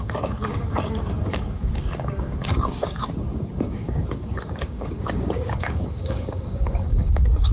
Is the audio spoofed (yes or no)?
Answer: yes